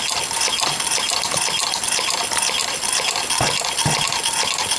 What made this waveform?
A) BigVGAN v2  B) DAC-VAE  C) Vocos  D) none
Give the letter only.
D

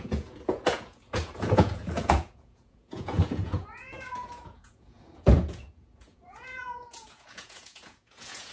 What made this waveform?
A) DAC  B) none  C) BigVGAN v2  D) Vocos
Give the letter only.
D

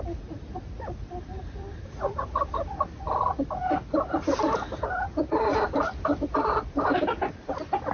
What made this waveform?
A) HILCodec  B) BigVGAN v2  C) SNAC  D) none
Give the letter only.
B